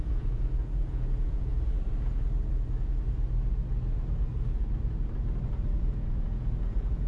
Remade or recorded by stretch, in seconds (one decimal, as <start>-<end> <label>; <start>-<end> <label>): 0.0-1.5 remade; 1.5-5.8 recorded; 5.8-7.1 remade